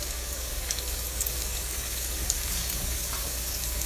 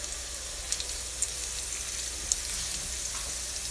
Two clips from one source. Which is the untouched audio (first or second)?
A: second